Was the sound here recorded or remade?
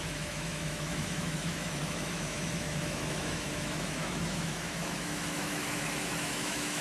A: remade